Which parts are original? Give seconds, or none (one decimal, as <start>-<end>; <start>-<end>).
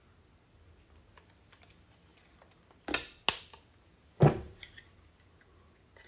0.0-6.1